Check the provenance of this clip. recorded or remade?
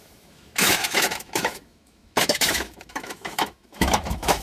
remade